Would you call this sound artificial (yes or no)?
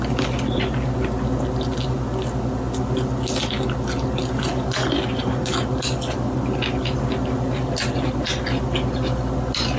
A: no